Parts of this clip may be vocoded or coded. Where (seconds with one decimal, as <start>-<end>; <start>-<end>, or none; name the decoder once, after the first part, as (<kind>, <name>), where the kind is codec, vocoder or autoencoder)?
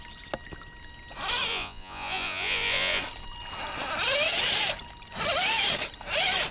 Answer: 1.5-3.0 (vocoder, Vocos)